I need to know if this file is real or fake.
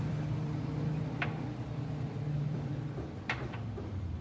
fake